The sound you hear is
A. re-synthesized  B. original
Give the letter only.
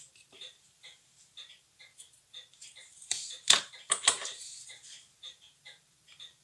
A